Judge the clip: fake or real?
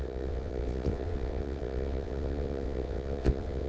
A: fake